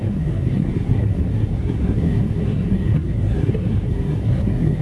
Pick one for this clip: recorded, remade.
remade